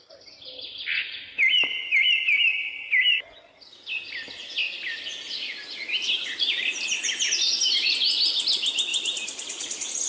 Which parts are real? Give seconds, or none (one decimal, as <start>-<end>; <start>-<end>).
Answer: 0.0-10.1